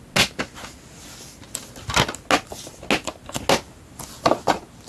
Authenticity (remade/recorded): recorded